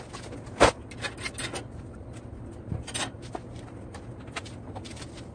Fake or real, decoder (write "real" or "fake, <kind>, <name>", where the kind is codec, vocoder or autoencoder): real